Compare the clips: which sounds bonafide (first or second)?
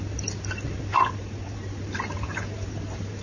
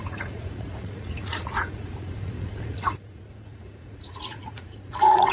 first